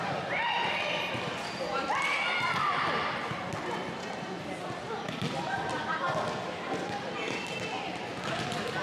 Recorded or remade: recorded